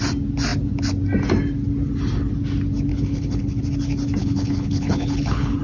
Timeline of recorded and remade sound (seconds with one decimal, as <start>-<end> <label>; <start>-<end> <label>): 0.0-2.9 recorded; 2.9-3.6 remade; 3.6-4.2 recorded; 4.2-5.6 remade